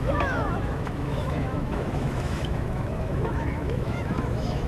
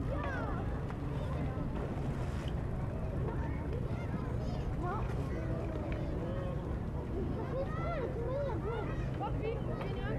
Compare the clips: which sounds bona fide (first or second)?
second